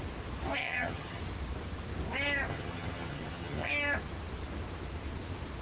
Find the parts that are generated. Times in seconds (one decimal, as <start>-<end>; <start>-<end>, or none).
0.6-1.2; 2.5-3.7